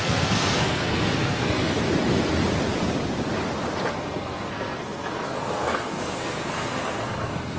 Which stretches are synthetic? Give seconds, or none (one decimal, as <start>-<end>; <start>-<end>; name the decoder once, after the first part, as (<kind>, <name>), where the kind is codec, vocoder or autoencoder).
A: 0.0-1.7 (codec, SNAC); 3.9-7.6